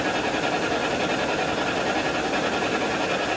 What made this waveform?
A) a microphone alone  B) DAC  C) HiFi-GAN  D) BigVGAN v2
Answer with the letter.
A